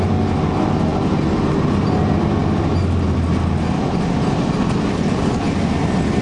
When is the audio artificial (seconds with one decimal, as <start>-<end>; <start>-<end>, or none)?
none